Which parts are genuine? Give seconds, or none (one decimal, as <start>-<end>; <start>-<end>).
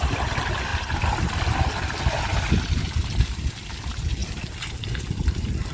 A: 0.0-5.7